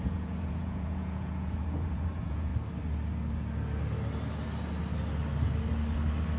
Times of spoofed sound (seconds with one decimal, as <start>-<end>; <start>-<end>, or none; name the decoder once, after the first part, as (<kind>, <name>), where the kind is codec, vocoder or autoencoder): 0.0-2.5 (vocoder, Vocos)